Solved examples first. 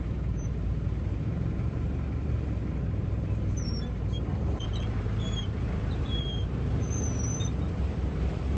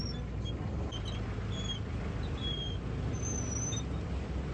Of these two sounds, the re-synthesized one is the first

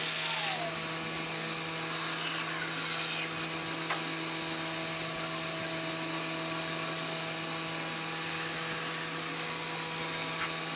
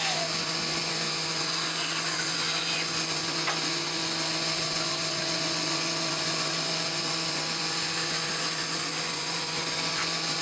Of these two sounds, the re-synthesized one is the second